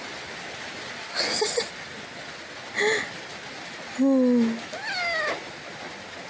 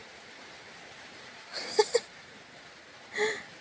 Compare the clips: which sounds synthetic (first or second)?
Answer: second